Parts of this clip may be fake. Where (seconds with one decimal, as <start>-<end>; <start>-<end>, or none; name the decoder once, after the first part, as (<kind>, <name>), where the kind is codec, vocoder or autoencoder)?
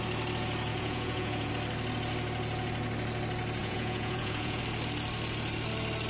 0.7-1.5 (vocoder, Vocos); 3.6-4.6